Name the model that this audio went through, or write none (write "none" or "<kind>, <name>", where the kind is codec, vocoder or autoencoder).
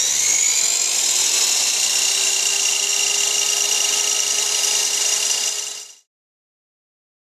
none